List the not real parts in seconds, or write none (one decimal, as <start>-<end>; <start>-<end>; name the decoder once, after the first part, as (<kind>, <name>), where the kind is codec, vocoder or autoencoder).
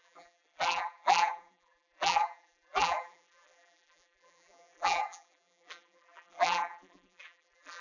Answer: 0.0-7.8 (vocoder, BigVGAN v2)